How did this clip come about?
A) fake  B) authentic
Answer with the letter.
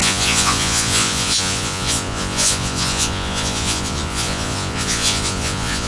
A